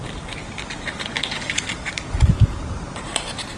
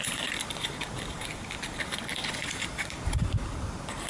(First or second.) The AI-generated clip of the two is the second